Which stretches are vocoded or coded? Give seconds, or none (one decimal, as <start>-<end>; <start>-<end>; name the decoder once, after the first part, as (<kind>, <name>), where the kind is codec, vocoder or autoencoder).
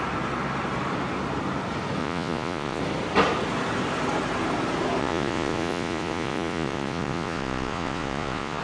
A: 2.0-2.8 (vocoder, Vocos); 5.0-8.6